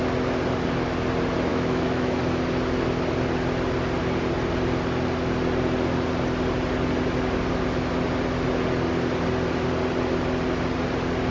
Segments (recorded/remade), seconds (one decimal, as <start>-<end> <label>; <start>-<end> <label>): 0.0-1.5 recorded; 1.5-2.2 remade; 2.2-11.3 recorded